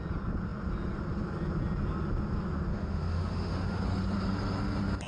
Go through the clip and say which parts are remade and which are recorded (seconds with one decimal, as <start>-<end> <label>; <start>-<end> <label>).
0.0-2.7 recorded; 2.7-3.8 remade; 3.8-5.1 recorded